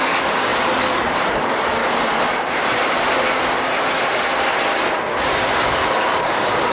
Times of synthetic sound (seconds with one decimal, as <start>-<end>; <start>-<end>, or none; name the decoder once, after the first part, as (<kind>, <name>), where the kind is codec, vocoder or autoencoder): 0.0-1.8 (codec, DAC); 5.5-6.7